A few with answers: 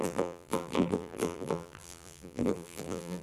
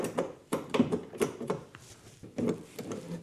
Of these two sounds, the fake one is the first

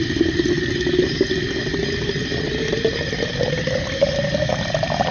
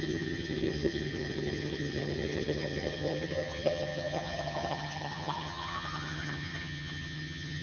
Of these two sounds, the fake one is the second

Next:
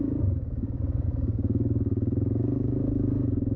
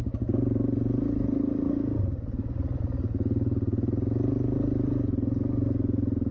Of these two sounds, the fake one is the first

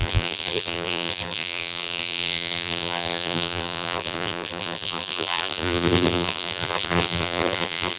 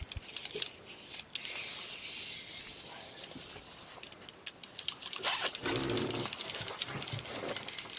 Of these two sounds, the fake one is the first